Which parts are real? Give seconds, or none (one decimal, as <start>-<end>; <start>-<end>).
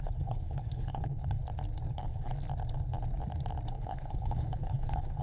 1.4-1.9; 2.3-3.7